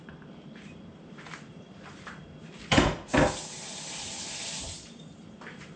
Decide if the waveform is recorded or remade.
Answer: remade